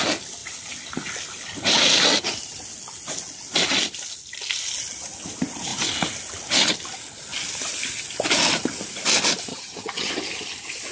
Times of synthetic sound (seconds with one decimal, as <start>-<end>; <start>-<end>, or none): 9.5-10.1